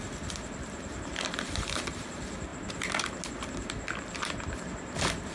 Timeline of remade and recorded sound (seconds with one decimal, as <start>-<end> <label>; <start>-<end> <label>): 0.0-5.3 recorded